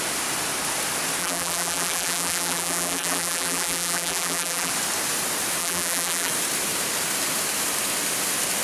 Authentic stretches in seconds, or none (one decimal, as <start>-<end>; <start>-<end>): 0.0-1.2; 4.7-5.6; 6.3-8.6